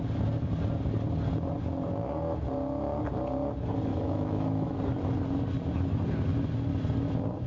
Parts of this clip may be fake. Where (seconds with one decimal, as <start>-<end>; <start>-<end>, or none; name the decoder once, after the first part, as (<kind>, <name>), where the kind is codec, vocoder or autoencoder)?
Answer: 3.9-4.8 (autoencoder, DAC-VAE)